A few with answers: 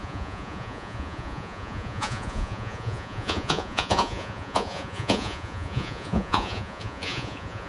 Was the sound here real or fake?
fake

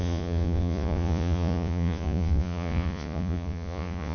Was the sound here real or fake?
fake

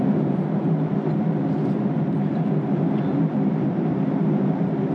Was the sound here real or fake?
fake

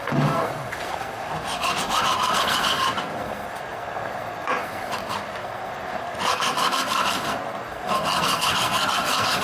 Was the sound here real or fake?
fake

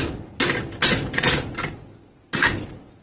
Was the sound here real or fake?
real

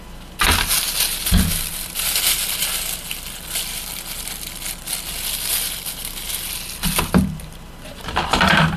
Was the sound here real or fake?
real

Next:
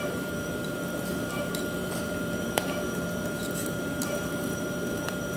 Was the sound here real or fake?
fake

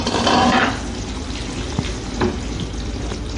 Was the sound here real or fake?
real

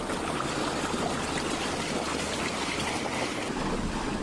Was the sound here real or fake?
real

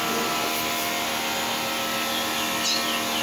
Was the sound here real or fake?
real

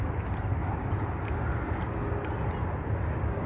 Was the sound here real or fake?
real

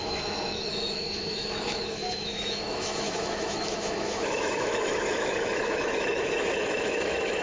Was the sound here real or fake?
fake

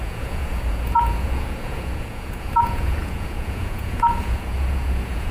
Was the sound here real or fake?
fake